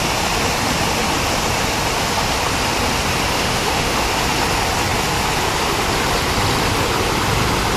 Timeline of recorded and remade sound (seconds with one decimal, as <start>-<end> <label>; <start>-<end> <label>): 0.0-3.3 recorded; 3.3-4.1 remade; 4.1-7.8 recorded